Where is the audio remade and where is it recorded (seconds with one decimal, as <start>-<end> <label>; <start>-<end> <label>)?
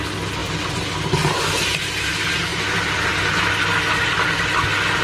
0.0-0.4 recorded; 0.4-1.5 remade; 1.5-2.5 recorded; 2.5-3.2 remade; 3.2-5.0 recorded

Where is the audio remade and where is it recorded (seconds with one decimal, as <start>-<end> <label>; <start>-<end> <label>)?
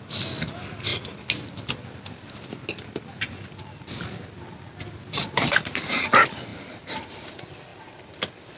0.0-6.5 recorded; 6.5-7.3 remade; 7.3-8.6 recorded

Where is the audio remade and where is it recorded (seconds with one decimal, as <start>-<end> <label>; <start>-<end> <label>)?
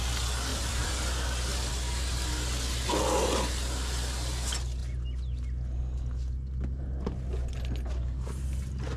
0.0-0.5 recorded; 0.5-1.7 remade; 1.7-9.0 recorded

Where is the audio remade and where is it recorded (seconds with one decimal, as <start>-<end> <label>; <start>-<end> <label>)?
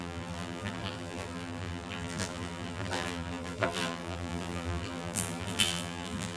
0.0-6.4 remade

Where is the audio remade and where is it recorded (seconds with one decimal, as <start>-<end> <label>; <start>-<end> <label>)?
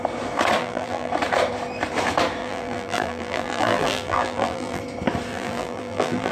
0.0-0.6 recorded; 0.6-1.1 remade; 1.1-2.4 recorded; 2.4-4.8 remade; 4.8-5.3 recorded; 5.3-6.3 remade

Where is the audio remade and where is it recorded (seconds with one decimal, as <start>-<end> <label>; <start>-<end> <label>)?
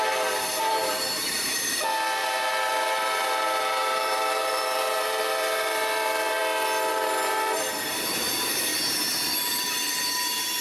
0.0-6.4 remade; 6.4-6.9 recorded; 6.9-8.7 remade; 8.7-9.4 recorded; 9.4-10.6 remade